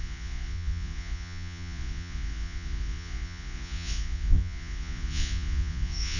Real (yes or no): no